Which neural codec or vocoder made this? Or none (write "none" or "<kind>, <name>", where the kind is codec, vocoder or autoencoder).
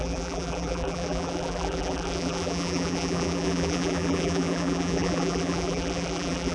vocoder, BigVGAN v2